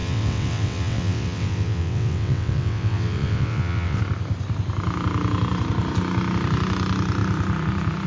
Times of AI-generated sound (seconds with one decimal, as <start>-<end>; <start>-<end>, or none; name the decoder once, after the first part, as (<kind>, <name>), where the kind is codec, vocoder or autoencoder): 0.0-4.0 (vocoder, WaveNeXt)